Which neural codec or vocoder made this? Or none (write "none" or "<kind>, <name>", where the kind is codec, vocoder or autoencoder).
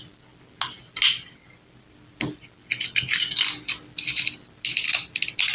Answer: none